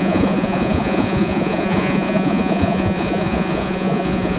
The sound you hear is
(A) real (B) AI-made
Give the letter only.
B